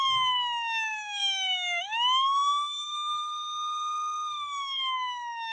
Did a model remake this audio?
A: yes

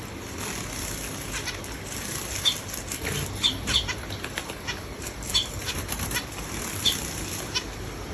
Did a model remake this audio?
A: no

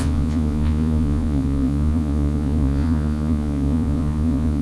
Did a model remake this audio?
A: yes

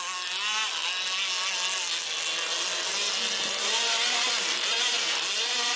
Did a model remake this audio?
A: no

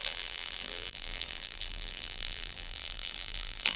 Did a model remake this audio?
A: yes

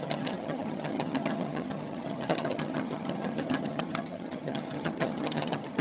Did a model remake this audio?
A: yes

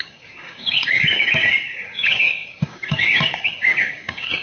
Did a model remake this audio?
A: yes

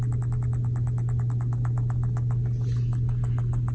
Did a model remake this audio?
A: no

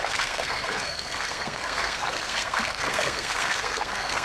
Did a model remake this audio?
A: yes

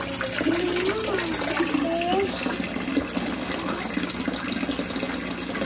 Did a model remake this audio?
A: no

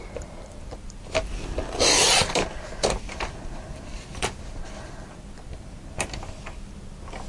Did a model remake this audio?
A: no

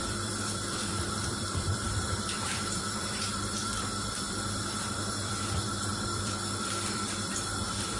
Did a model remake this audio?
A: yes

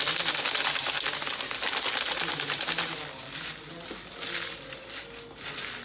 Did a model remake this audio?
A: no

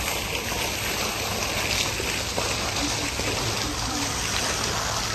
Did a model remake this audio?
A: no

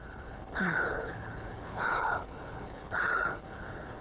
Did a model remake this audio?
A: yes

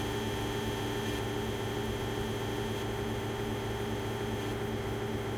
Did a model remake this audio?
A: no